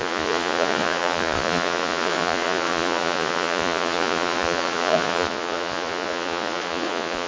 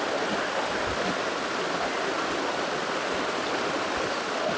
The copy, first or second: first